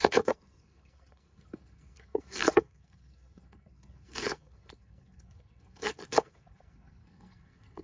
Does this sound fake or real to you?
fake